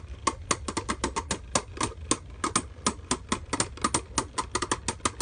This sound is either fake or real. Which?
real